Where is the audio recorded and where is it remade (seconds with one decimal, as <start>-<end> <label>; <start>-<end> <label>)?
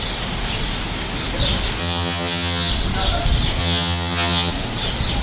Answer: 0.0-1.8 recorded; 1.8-2.7 remade; 2.7-3.6 recorded; 3.6-4.5 remade; 4.5-5.2 recorded